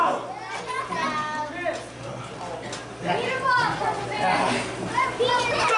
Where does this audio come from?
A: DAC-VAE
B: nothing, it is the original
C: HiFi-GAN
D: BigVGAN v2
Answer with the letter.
B